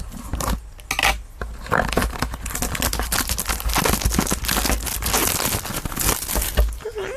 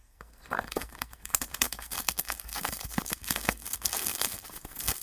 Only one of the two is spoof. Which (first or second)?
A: second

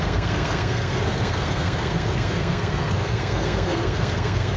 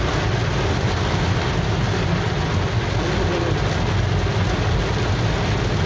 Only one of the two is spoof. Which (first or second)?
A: first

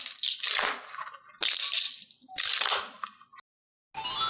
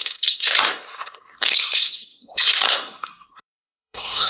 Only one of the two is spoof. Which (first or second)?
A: second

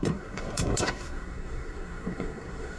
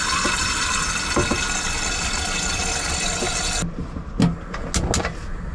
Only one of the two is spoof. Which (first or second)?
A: first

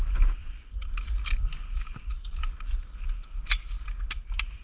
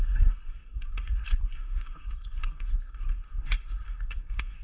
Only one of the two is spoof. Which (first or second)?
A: second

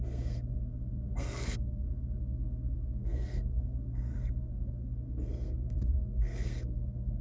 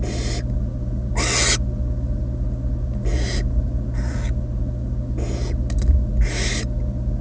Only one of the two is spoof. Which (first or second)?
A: first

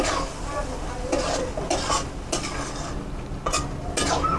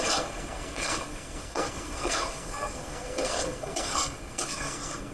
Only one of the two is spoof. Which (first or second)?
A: second